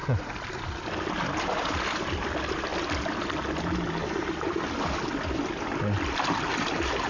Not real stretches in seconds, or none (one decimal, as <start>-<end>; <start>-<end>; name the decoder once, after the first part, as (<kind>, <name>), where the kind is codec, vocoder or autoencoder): none